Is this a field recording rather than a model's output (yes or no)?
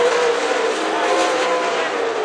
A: no